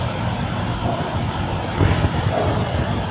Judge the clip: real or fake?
real